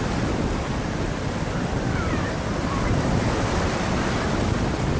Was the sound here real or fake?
real